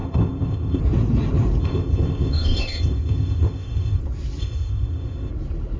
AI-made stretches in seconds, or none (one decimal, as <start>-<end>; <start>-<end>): 0.0-0.8; 1.6-4.0; 4.4-5.3